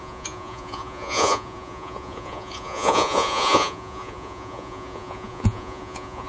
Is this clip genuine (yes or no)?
no